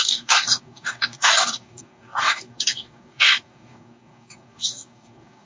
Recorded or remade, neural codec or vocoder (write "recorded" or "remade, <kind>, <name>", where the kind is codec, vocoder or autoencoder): remade, codec, DAC